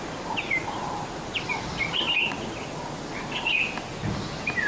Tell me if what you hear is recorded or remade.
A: recorded